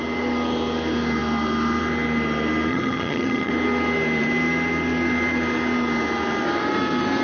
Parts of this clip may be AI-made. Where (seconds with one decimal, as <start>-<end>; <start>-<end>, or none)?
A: 2.7-3.5